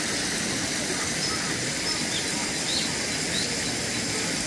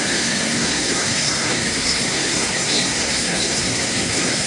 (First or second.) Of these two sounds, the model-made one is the second